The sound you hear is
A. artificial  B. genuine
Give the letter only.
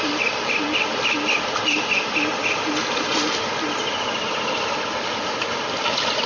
B